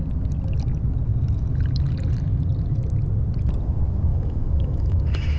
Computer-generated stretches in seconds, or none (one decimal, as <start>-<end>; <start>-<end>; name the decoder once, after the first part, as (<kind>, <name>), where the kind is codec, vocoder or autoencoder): 4.1-5.4 (autoencoder, DAC-VAE)